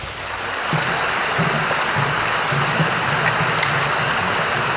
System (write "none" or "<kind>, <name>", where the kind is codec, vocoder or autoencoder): none